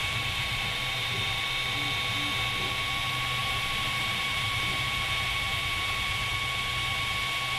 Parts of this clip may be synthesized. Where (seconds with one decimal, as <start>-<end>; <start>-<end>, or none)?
0.0-1.4; 3.4-6.3